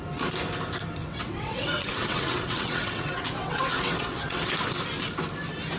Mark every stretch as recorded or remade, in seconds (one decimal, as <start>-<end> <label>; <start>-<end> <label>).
0.0-1.0 recorded; 1.0-4.5 remade; 4.5-5.8 recorded